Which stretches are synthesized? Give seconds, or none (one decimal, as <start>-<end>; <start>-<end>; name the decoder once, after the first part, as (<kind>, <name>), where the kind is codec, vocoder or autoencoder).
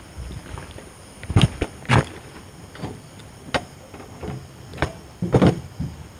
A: 0.4-3.2 (vocoder, BigVGAN v2); 4.7-5.7